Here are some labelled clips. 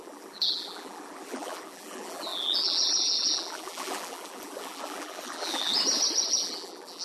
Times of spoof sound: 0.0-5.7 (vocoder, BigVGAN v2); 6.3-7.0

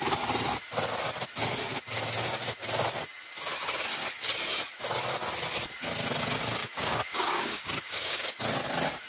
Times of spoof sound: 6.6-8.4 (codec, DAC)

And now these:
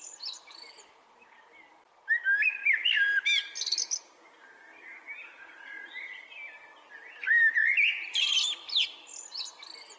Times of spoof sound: none